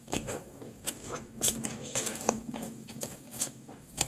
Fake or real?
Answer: fake